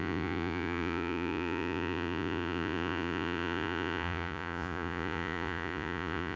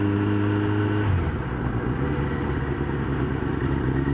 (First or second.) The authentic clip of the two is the second